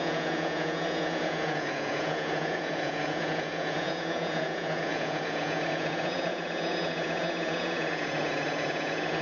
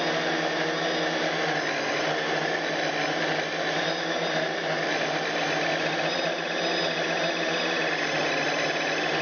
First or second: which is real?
second